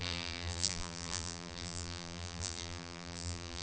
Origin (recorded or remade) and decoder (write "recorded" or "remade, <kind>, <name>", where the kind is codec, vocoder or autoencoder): remade, vocoder, BigVGAN v2